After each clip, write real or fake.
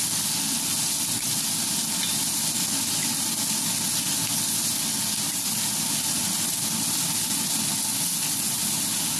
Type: real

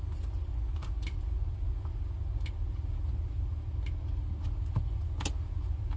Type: real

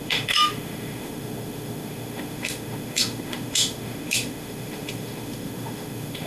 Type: fake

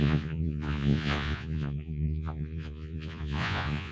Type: fake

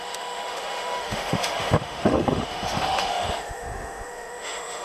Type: fake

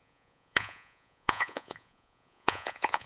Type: fake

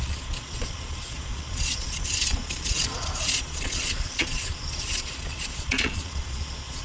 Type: fake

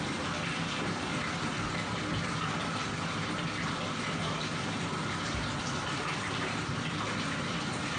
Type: real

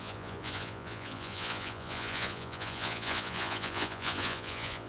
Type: fake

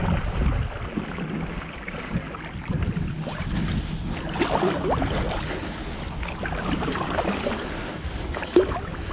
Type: real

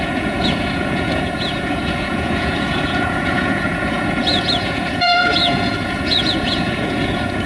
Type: fake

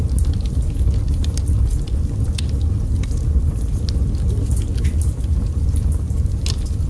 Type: real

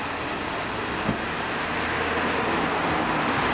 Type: real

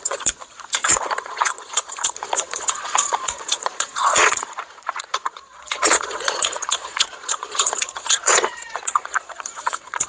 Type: fake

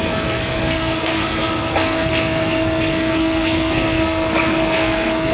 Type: fake